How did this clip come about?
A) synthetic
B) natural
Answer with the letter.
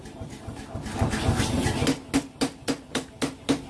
B